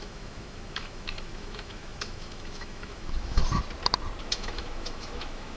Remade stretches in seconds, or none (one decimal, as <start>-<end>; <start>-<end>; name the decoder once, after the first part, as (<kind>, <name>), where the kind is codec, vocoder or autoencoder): 0.0-3.4 (autoencoder, DAC-VAE); 4.2-5.6